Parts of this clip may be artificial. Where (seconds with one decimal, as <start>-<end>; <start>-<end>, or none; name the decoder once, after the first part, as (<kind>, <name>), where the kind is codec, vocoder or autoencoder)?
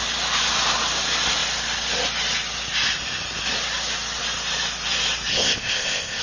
5.3-6.2 (codec, ZipCodec)